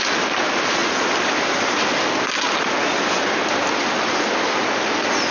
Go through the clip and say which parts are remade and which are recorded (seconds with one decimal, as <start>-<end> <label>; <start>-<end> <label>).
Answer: 0.0-5.3 recorded